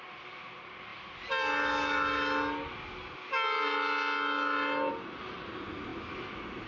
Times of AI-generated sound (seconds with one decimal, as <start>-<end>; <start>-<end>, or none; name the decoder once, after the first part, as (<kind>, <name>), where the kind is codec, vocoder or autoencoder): none